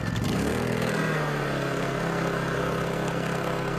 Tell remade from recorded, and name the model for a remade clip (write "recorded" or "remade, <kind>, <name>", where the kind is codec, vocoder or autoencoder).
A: remade, codec, SNAC